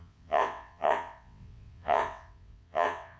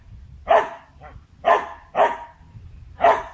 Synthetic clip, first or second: first